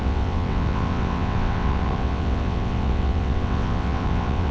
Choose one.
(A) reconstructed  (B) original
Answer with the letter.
A